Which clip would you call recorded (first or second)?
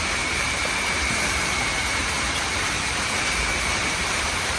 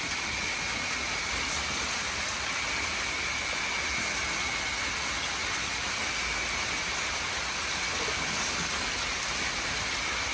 second